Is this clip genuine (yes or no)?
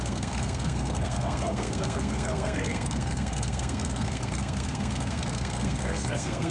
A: no